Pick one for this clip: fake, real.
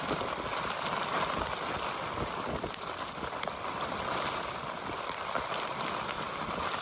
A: real